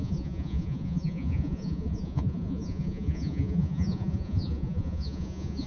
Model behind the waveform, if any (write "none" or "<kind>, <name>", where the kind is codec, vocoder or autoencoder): vocoder, Vocos